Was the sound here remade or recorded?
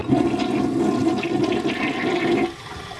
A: recorded